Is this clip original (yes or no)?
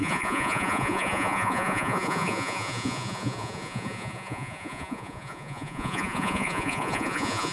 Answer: no